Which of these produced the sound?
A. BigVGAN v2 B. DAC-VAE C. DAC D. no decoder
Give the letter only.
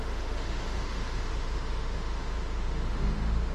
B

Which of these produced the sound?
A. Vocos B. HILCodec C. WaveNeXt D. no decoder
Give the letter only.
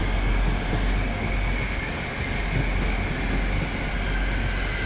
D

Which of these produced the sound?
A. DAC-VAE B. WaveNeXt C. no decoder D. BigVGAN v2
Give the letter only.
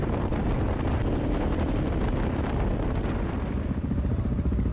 D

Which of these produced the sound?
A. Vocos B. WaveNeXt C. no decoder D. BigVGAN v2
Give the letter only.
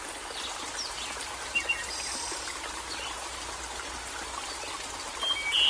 C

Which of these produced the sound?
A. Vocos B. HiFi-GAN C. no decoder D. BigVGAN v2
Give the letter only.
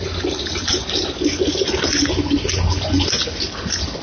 C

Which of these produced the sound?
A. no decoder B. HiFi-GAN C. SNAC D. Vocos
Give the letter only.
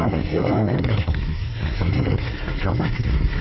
C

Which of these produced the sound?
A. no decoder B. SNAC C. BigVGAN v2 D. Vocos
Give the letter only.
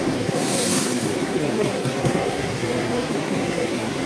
B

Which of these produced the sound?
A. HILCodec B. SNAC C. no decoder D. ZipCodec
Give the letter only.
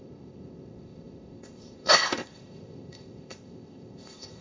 D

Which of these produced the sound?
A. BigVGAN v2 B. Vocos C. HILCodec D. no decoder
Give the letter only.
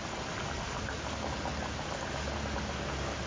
D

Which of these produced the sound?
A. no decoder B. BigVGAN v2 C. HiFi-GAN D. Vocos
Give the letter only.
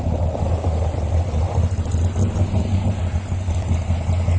A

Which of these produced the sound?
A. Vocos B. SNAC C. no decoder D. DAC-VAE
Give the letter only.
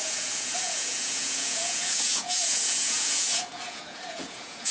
A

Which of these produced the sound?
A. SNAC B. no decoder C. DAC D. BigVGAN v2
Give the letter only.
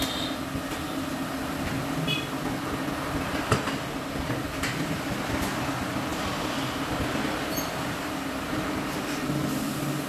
B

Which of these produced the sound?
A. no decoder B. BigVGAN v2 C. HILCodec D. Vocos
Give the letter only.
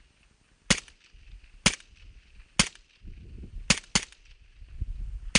A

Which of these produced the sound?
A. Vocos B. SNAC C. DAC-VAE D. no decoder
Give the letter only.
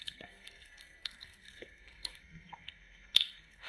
B